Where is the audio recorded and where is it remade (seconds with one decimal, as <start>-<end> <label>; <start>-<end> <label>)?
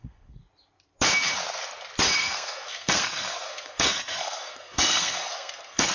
0.0-0.4 remade; 0.4-2.2 recorded; 2.2-5.9 remade